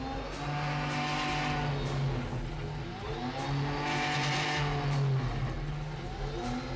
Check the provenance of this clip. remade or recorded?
recorded